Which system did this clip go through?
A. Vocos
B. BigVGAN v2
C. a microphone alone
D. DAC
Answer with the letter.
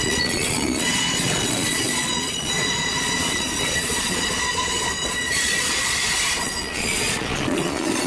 A